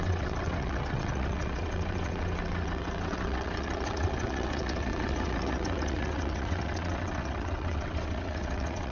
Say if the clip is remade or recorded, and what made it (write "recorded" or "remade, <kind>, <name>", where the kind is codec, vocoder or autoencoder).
remade, vocoder, WaveNeXt